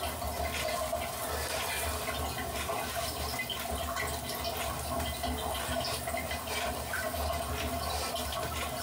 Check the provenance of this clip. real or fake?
real